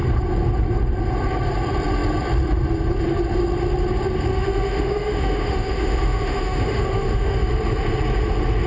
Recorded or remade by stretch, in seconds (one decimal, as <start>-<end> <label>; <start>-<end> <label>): 0.0-4.3 recorded; 4.3-7.5 remade; 7.5-8.7 recorded